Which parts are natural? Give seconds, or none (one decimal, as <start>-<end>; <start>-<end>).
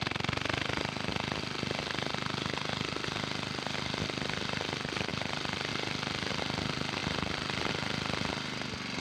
0.0-9.0